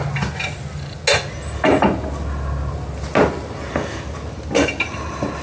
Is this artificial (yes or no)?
no